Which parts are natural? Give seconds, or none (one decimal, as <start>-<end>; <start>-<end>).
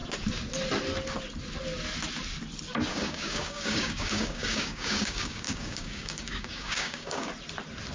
0.0-2.9; 7.3-7.9